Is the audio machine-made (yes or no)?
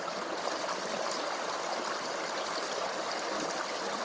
no